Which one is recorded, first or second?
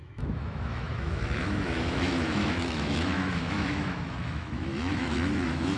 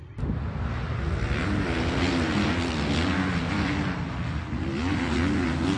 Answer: second